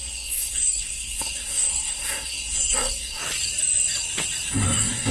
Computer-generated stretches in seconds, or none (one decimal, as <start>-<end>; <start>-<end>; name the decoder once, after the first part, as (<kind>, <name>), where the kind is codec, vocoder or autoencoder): 0.0-3.2 (codec, SNAC); 4.5-5.1